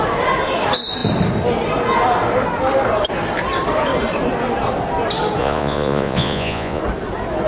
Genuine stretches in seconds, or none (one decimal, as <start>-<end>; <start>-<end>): 0.0-5.4; 6.8-7.5